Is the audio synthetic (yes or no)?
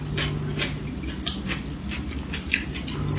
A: no